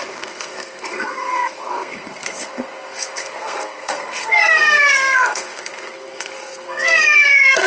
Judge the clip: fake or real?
fake